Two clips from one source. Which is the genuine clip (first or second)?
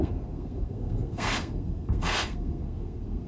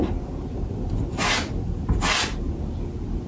second